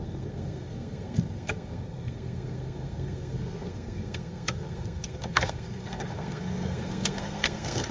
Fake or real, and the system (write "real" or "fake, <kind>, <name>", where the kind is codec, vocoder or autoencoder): fake, codec, SNAC